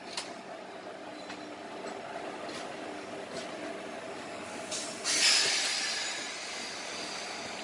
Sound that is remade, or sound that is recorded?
recorded